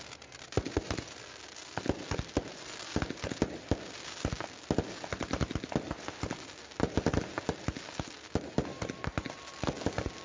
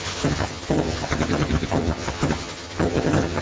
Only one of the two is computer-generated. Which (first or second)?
second